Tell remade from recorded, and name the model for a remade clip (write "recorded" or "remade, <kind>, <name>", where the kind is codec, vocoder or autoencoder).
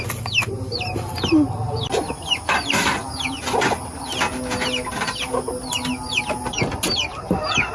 recorded